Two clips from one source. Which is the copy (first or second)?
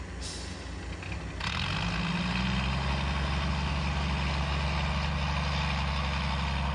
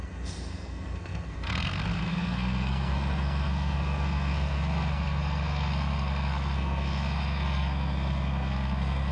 second